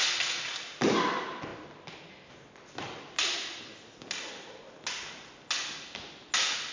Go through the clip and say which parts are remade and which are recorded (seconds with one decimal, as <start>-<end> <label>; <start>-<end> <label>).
0.0-6.7 recorded